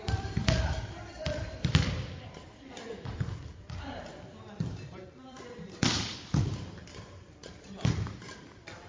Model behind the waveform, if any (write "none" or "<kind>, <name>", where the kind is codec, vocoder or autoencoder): vocoder, BigVGAN v2